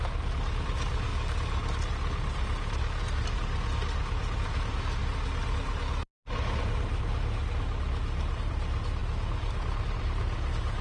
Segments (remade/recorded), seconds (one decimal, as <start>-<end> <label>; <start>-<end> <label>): 0.0-10.8 recorded